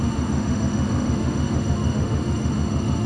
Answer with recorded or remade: remade